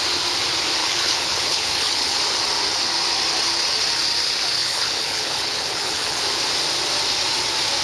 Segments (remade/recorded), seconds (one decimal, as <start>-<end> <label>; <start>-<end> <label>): 0.0-0.8 recorded; 0.8-2.2 remade; 2.2-4.6 recorded; 4.6-6.2 remade; 6.2-7.8 recorded